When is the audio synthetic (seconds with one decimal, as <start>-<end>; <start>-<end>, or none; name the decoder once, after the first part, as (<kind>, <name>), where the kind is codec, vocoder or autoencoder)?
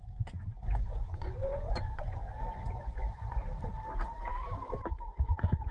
0.0-3.4 (vocoder, Vocos)